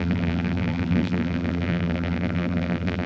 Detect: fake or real fake